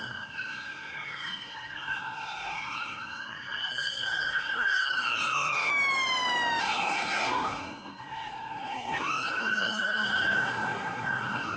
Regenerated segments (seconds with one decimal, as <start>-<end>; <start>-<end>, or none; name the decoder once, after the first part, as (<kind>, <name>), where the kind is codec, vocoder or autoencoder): 0.0-5.7 (codec, SNAC); 6.6-11.6